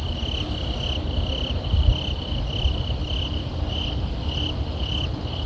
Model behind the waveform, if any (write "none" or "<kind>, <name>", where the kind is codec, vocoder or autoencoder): none